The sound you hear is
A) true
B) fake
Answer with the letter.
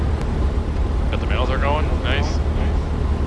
A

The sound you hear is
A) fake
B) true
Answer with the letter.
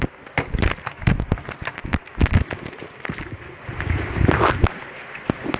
B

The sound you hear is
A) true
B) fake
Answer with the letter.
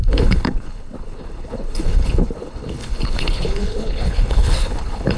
B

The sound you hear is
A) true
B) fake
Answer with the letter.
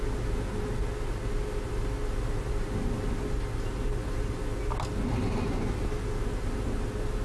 A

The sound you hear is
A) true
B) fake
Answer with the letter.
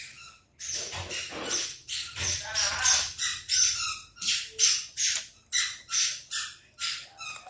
A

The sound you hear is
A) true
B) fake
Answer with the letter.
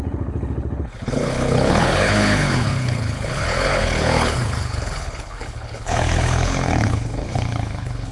B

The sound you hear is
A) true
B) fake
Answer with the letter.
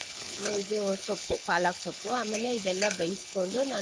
B